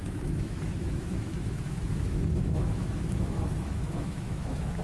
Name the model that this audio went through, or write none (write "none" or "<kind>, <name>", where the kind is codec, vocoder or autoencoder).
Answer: autoencoder, DAC-VAE